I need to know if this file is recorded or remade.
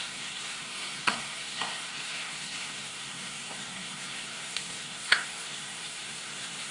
remade